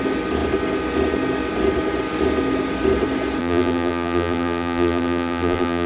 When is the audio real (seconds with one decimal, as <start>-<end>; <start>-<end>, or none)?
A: 0.0-3.4